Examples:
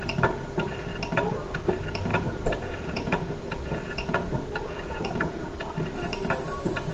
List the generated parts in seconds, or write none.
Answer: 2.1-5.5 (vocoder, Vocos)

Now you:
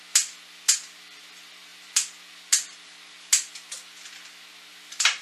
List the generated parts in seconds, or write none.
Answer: none

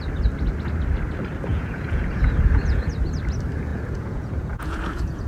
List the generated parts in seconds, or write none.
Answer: 1.5-2.9 (vocoder, Vocos); 3.7-5.3

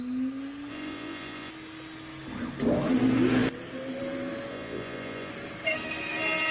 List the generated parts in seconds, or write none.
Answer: 0.7-1.5 (vocoder, Vocos); 4.5-5.3

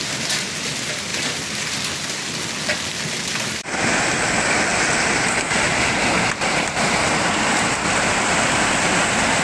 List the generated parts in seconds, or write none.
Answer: none